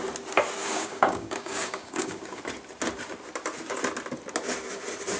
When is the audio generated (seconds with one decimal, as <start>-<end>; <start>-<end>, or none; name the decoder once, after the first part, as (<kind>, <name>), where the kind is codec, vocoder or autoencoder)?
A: 0.6-2.4 (codec, DAC)